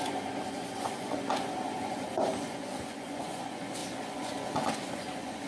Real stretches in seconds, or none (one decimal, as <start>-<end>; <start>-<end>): none